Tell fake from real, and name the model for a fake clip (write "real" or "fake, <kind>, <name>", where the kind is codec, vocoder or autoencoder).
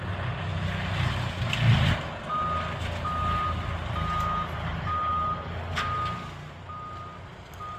real